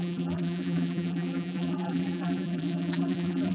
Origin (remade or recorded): remade